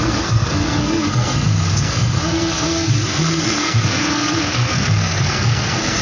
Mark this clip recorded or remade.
remade